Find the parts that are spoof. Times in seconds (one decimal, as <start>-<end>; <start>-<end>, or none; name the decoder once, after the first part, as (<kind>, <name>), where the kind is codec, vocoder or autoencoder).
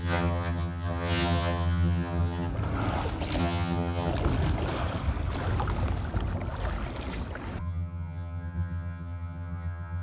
0.0-2.5 (vocoder, HiFi-GAN); 3.4-4.1; 7.6-10.0